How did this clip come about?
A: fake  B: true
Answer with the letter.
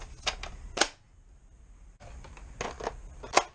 B